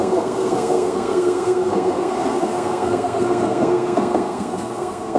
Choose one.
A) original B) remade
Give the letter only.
B